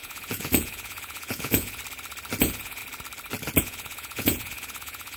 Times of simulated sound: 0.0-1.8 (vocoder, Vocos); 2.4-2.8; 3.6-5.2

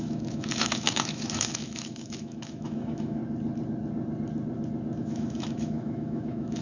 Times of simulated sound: 0.0-3.2 (autoencoder, DAC-VAE); 5.0-6.6

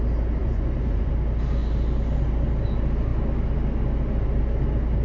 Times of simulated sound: 0.4-1.1 (vocoder, Vocos)

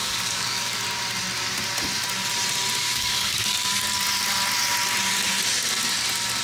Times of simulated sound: 0.0-0.8 (codec, DAC); 2.8-3.8

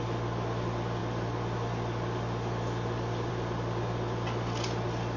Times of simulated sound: none

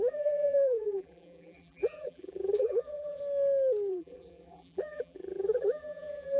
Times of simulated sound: 0.0-3.2 (vocoder, BigVGAN v2); 3.9-6.4

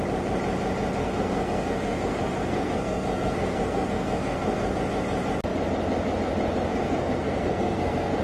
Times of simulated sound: 1.0-4.8 (codec, SNAC); 6.7-8.2

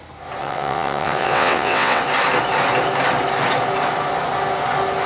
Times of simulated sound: 0.4-2.0 (vocoder, WaveNeXt)